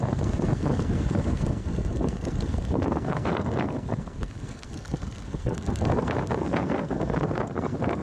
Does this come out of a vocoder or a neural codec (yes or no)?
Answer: yes